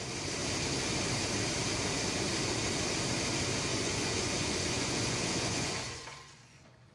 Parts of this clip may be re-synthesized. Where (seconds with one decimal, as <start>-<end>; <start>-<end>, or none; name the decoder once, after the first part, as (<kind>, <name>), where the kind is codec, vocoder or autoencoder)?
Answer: 3.7-6.9 (vocoder, Vocos)